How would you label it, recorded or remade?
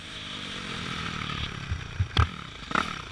remade